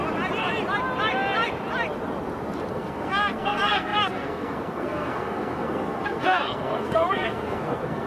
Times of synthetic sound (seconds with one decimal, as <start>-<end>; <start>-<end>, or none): 2.7-8.1